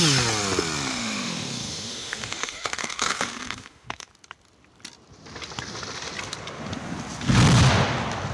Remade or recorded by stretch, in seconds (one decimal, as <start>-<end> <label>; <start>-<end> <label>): 0.0-0.9 recorded; 0.9-4.1 remade; 4.1-8.3 recorded